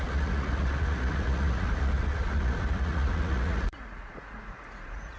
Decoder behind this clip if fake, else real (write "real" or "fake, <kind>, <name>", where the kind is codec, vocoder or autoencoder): fake, vocoder, Vocos